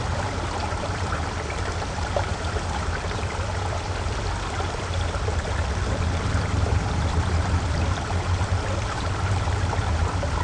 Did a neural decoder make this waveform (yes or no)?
yes